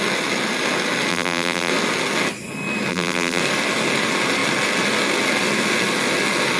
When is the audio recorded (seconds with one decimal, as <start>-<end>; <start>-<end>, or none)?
0.0-1.1; 1.7-2.9; 3.4-6.6